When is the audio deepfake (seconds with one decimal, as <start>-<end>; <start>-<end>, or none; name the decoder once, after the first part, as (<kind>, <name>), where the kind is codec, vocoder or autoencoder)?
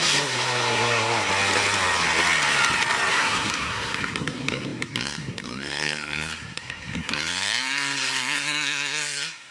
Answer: 0.0-1.3 (codec, SNAC); 3.1-9.5